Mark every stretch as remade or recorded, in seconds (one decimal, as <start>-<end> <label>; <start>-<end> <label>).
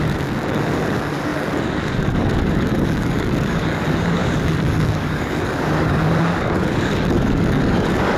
0.0-8.2 remade